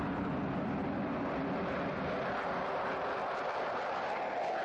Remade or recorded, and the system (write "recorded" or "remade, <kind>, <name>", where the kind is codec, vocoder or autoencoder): recorded